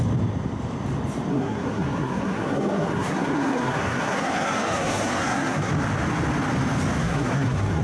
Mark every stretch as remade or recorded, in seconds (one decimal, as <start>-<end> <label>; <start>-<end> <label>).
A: 0.0-1.3 recorded; 1.3-5.7 remade; 5.7-7.0 recorded; 7.0-7.8 remade